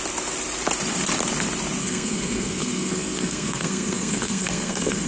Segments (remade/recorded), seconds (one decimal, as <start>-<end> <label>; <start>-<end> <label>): 0.0-1.8 recorded; 1.8-5.1 remade